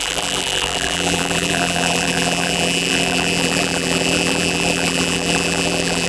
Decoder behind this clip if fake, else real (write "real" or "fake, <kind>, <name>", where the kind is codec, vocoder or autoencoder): fake, vocoder, BigVGAN v2